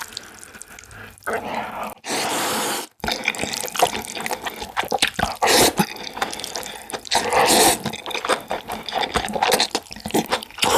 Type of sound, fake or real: real